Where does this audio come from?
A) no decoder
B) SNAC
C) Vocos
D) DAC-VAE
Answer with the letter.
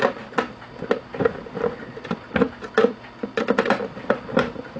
A